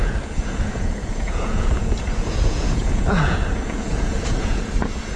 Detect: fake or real fake